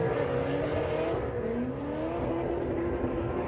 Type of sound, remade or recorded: recorded